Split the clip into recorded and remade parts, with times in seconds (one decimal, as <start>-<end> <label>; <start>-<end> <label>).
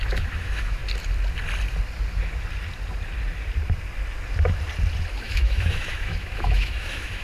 0.0-0.8 remade; 0.8-5.1 recorded; 5.1-7.2 remade